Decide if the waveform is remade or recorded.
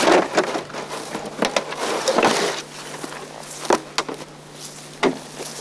recorded